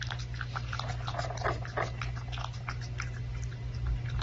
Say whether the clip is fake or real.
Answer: real